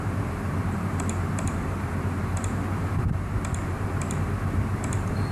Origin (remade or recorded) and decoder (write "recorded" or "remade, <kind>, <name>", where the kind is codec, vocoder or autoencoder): remade, vocoder, BigVGAN v2